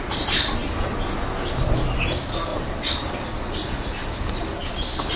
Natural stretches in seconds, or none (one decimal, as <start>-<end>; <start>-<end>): 0.0-2.5; 3.1-5.2